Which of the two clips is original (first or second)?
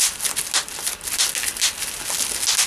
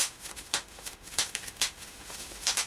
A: first